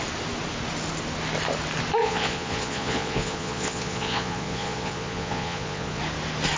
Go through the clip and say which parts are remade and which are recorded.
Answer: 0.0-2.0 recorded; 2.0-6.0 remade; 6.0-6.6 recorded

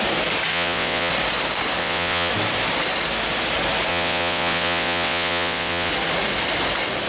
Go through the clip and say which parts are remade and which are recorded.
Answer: 0.0-0.5 recorded; 0.5-1.1 remade; 1.1-1.8 recorded; 1.8-2.3 remade; 2.3-3.9 recorded; 3.9-5.9 remade; 5.9-7.1 recorded

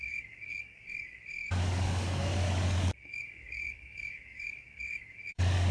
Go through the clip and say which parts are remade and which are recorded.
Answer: 0.0-5.7 remade

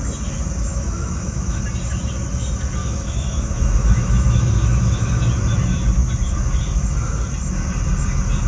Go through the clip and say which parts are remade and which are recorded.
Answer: 0.0-0.7 recorded; 0.7-1.6 remade; 1.6-2.8 recorded; 2.8-5.2 remade; 5.2-8.5 recorded

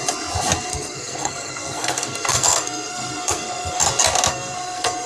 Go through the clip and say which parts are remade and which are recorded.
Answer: 0.0-0.7 recorded; 0.7-3.8 remade; 3.8-4.3 recorded; 4.3-5.1 remade